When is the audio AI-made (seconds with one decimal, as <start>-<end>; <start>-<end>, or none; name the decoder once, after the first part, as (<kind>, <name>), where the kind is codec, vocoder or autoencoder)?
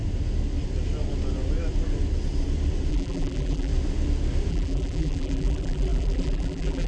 2.9-3.7 (vocoder, BigVGAN v2); 4.5-6.9